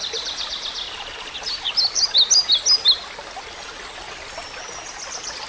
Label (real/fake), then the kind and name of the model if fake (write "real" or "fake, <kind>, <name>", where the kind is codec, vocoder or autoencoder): real